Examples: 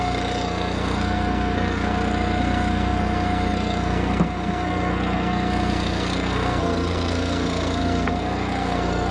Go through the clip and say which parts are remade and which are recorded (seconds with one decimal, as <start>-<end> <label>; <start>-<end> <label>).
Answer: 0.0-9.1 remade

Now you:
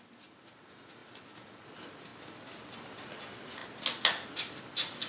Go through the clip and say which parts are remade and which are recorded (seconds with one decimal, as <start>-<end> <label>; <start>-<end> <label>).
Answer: 0.0-5.1 recorded

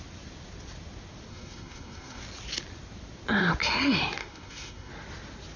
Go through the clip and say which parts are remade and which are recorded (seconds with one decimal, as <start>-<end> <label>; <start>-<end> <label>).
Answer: 0.0-1.3 recorded; 1.3-2.2 remade; 2.2-4.2 recorded; 4.2-4.9 remade; 4.9-5.6 recorded